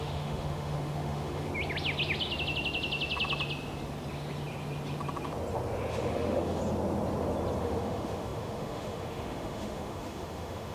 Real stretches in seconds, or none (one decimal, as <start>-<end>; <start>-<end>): 1.5-5.9; 6.6-7.6